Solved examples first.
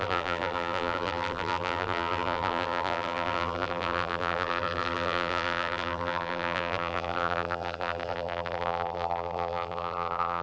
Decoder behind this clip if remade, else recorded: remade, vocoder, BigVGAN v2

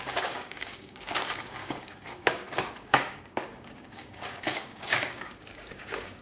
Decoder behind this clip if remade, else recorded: remade, codec, DAC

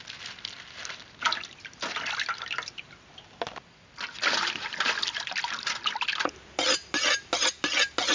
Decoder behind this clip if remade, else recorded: recorded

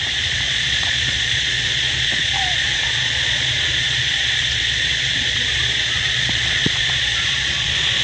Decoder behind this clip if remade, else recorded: remade, vocoder, Vocos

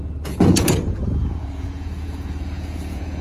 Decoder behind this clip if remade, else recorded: remade, vocoder, Vocos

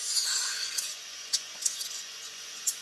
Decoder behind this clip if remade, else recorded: remade, vocoder, Vocos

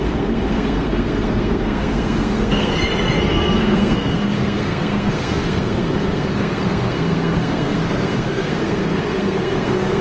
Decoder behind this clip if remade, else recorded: remade, codec, SNAC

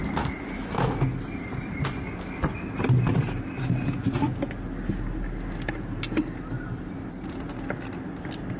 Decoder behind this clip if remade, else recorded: recorded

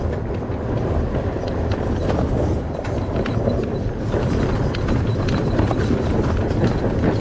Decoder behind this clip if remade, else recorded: recorded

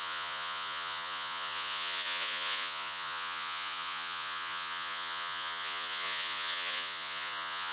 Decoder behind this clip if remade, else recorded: remade, vocoder, Vocos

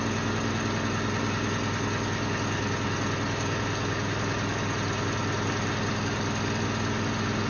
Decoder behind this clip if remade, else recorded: recorded